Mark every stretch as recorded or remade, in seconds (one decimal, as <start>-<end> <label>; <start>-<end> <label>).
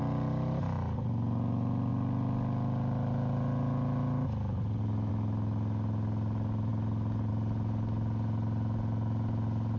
0.0-9.8 recorded